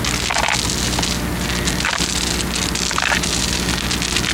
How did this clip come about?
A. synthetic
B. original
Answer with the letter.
B